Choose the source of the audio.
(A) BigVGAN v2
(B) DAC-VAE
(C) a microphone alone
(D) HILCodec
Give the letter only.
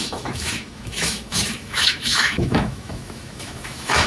B